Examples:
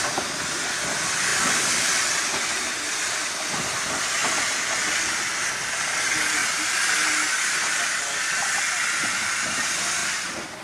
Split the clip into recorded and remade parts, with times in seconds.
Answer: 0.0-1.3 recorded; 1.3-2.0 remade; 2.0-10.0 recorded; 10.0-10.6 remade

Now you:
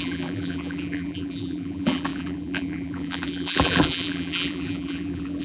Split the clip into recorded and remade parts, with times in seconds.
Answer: 0.0-5.4 remade